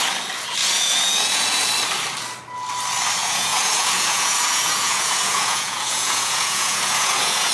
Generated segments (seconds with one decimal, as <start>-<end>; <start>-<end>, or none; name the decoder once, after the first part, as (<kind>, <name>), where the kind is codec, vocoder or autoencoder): 0.6-1.7 (vocoder, Vocos); 3.2-7.5